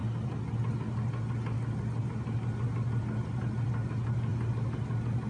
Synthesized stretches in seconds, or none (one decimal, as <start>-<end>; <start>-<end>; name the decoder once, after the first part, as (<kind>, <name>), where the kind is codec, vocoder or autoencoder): none